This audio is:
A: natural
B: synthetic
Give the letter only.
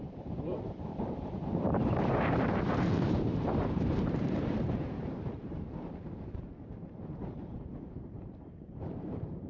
B